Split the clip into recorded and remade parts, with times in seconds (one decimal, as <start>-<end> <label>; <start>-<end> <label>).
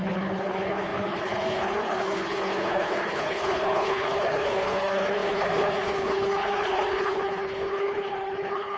0.0-8.8 remade